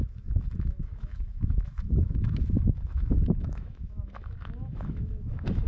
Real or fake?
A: fake